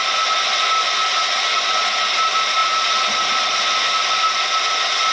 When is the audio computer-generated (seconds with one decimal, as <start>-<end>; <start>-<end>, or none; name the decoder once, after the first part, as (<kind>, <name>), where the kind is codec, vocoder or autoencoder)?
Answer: none